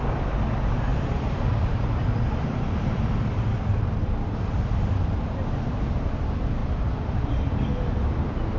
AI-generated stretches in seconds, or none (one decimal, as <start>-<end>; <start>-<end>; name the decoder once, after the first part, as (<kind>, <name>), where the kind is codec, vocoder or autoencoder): 0.9-5.1 (vocoder, BigVGAN v2); 6.6-7.8